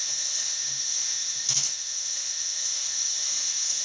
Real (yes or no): no